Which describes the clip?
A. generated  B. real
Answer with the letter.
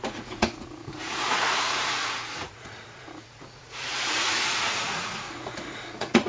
A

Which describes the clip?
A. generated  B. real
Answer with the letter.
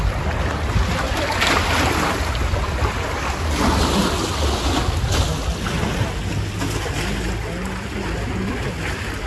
B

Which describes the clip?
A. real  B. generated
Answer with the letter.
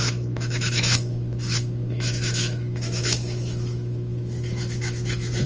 B